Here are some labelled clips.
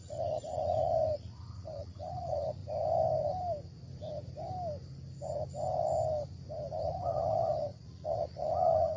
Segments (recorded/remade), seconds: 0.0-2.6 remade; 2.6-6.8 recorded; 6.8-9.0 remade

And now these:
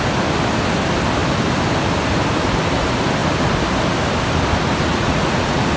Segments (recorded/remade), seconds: 0.0-4.9 recorded; 4.9-5.8 remade

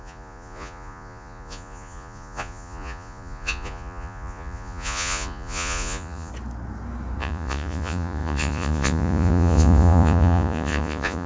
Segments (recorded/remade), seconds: 0.0-6.3 remade; 6.3-7.2 recorded; 7.2-11.3 remade

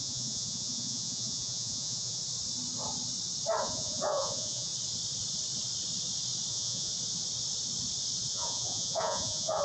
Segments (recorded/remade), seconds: 0.0-2.2 remade; 2.2-3.6 recorded; 3.6-4.7 remade; 4.7-6.5 recorded; 6.5-6.9 remade; 6.9-8.3 recorded; 8.3-9.6 remade